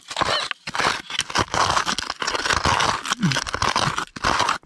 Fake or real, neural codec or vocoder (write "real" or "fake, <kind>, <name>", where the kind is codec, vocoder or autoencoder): real